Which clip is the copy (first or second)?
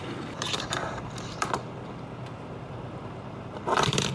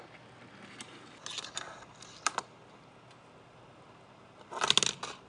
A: first